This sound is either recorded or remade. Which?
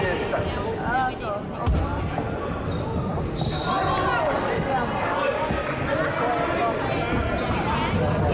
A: recorded